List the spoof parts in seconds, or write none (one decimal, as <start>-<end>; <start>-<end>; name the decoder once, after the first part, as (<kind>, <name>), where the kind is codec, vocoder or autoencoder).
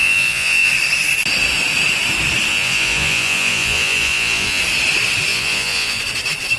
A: 0.0-0.7 (vocoder, Vocos); 2.5-4.6; 5.3-6.0